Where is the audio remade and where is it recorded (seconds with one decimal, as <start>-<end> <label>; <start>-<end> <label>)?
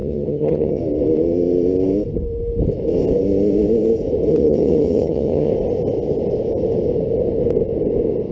0.0-0.8 remade; 0.8-4.3 recorded; 4.3-5.5 remade; 5.5-8.3 recorded